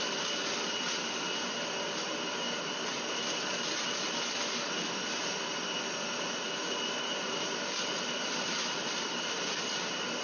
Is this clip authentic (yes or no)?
yes